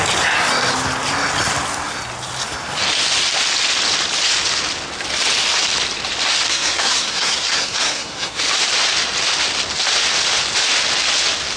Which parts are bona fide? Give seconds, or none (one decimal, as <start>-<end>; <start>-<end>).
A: 0.0-6.5; 8.4-11.6